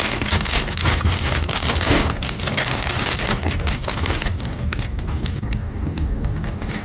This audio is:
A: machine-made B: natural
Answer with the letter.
A